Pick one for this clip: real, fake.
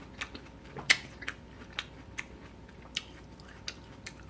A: real